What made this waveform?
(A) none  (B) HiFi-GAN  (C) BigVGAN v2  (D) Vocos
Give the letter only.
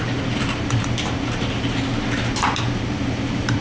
C